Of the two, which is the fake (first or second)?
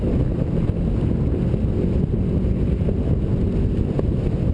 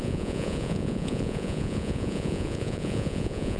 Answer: second